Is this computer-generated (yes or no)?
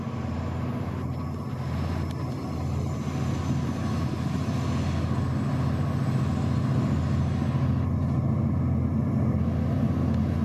no